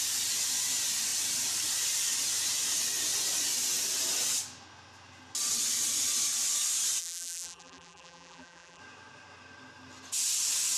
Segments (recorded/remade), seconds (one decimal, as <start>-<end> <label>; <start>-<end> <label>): 0.0-7.0 recorded; 7.0-8.8 remade; 8.8-10.8 recorded